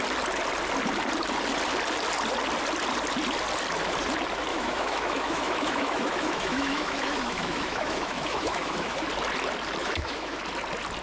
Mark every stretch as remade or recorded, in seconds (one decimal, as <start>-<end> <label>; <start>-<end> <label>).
0.0-4.5 recorded; 4.5-9.1 remade; 9.1-9.8 recorded; 9.8-10.4 remade; 10.4-11.0 recorded